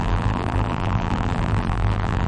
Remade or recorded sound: remade